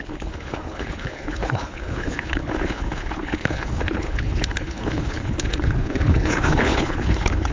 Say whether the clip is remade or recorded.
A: remade